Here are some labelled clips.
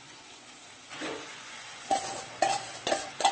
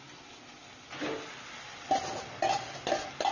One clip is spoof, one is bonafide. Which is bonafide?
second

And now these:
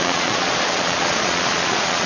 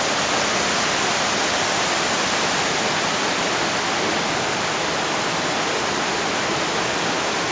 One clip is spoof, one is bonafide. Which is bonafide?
second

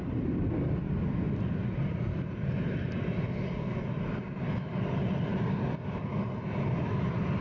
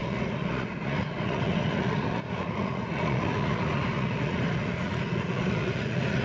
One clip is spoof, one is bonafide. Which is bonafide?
first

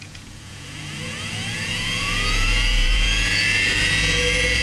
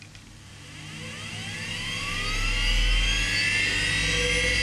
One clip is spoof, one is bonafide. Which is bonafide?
second